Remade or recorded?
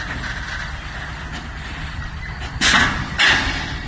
recorded